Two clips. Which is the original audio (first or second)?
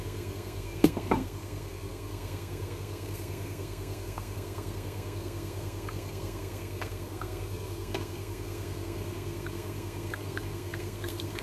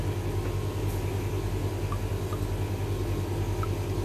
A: second